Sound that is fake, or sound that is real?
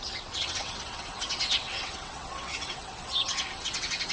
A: fake